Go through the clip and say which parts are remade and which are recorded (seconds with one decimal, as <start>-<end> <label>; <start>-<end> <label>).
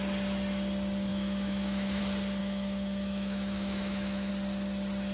0.0-1.1 recorded; 1.1-2.0 remade; 2.0-2.4 recorded; 2.4-4.3 remade; 4.3-5.1 recorded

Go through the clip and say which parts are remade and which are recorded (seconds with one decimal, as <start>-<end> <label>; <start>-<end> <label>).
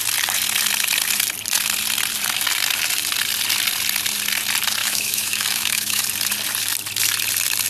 0.0-4.8 recorded; 4.8-6.0 remade; 6.0-7.7 recorded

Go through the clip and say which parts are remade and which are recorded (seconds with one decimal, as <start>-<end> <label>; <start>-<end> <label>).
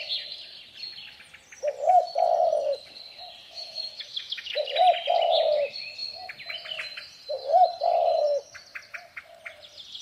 0.0-3.4 recorded; 3.4-4.6 remade; 4.6-10.0 recorded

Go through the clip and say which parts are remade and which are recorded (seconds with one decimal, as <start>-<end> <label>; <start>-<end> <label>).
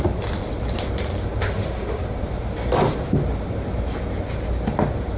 0.0-1.4 recorded; 1.4-2.0 remade; 2.0-5.2 recorded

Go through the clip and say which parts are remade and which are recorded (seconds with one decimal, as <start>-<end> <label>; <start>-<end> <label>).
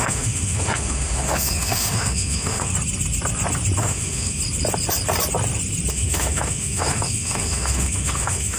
0.0-2.7 remade; 2.7-3.8 recorded; 3.8-4.4 remade; 4.4-5.9 recorded; 5.9-8.6 remade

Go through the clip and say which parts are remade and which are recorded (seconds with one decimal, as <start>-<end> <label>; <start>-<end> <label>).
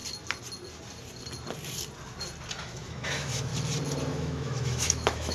0.0-2.6 recorded; 2.6-3.5 remade; 3.5-4.1 recorded; 4.1-5.3 remade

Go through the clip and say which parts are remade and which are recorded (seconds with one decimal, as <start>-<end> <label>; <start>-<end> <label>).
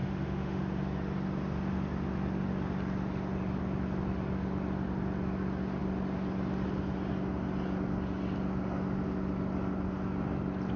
0.0-0.6 remade; 0.6-10.8 recorded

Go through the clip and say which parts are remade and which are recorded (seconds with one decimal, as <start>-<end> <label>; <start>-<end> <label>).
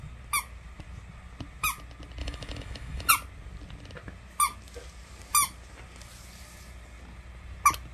0.0-2.2 recorded; 2.2-3.1 remade; 3.1-7.9 recorded